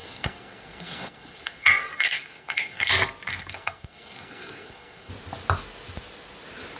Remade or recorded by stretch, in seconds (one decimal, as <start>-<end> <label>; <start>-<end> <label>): 0.0-2.9 remade; 2.9-3.3 recorded; 3.3-5.1 remade; 5.1-6.8 recorded